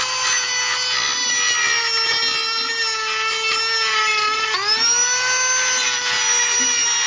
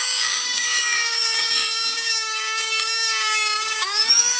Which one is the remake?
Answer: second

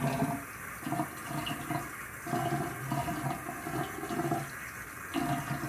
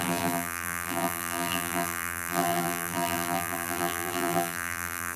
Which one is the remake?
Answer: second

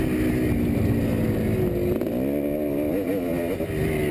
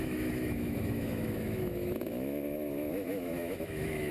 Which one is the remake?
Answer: second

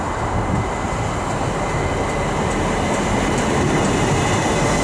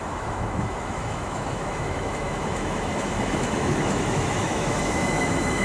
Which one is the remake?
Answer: second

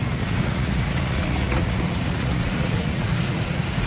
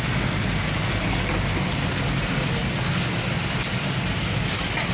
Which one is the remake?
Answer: first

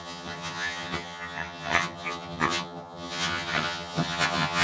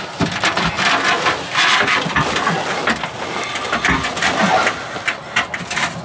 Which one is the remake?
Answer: first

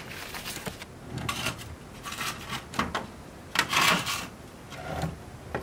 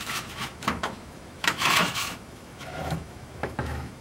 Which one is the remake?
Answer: second